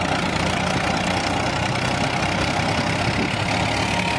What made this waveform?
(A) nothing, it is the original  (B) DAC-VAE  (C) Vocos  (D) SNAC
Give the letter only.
A